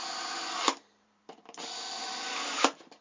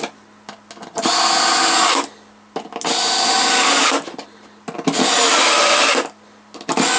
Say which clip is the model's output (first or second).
first